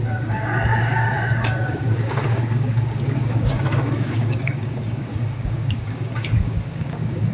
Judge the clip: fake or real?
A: fake